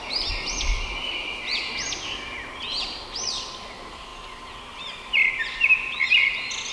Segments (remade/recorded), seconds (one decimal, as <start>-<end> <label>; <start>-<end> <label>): 0.0-6.7 recorded